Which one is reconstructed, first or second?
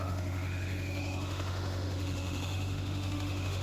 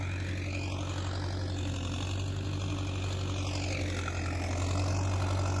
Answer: first